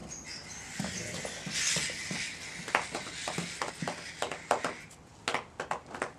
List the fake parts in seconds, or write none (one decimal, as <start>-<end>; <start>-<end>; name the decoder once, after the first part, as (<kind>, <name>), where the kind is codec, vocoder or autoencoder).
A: none